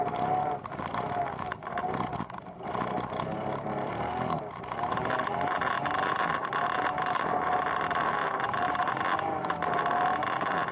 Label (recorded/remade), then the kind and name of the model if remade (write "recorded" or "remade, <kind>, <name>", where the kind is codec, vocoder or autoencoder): recorded